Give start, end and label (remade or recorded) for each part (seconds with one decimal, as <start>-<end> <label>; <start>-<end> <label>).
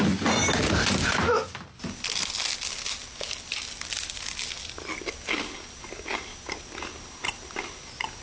0.0-8.2 recorded